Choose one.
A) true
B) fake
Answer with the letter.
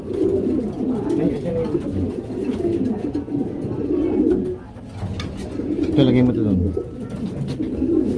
A